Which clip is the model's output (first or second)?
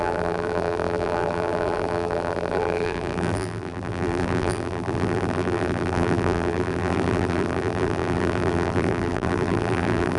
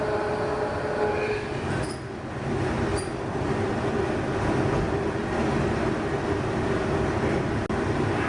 first